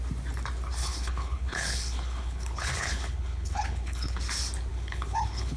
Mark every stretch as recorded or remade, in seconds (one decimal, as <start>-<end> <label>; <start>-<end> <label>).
0.0-0.8 recorded; 0.8-4.2 remade; 4.2-4.7 recorded; 4.7-5.6 remade